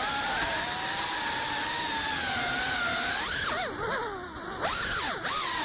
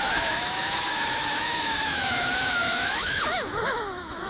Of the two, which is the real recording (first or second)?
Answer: first